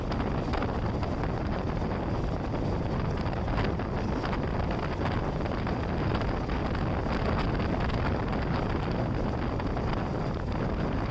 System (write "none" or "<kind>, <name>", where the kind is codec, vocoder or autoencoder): none